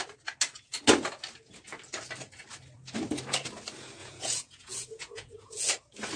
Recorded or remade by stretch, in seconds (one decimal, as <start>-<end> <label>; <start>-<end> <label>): 0.0-4.0 recorded; 4.0-5.7 remade; 5.7-6.2 recorded